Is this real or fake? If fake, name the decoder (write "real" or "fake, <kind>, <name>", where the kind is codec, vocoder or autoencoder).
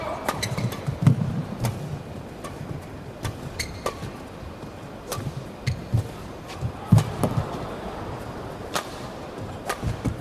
real